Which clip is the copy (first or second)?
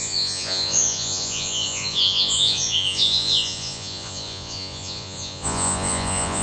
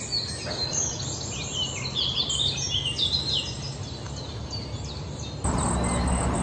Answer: first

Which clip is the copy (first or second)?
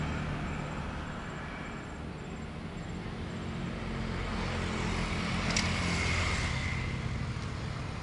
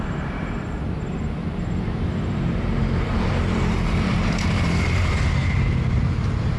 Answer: second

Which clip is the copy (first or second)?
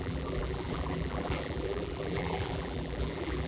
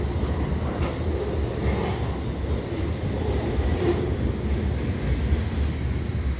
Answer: first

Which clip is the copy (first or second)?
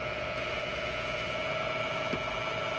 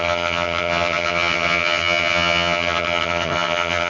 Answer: second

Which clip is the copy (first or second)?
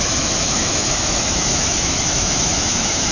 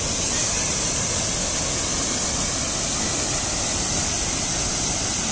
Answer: first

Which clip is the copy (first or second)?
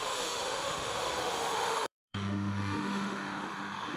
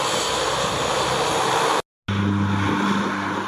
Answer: first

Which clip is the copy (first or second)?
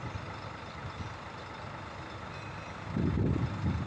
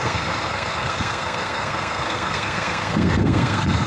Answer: second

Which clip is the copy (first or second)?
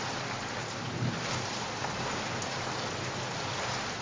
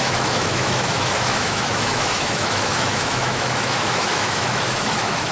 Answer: second